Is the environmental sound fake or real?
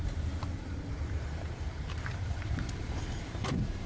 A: fake